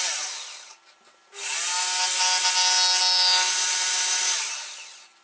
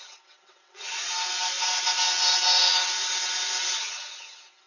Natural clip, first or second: first